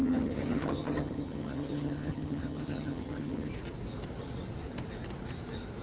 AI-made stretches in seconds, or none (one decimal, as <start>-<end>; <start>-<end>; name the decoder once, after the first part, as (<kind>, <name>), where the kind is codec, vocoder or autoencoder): 0.0-3.5 (vocoder, HiFi-GAN)